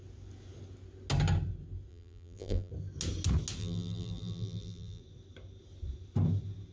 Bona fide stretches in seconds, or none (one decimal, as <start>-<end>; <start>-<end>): 0.0-1.9; 2.7-3.6; 5.0-6.7